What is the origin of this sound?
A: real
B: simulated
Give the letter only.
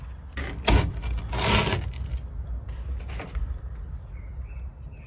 A